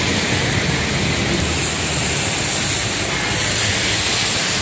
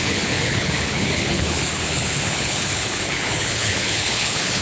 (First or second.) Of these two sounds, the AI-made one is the second